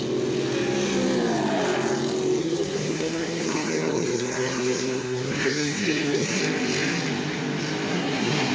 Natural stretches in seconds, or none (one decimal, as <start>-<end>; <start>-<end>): 0.0-2.4; 6.4-7.9